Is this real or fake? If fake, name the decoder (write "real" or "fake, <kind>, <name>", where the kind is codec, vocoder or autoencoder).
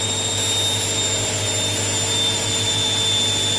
real